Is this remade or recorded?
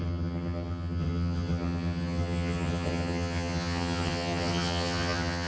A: remade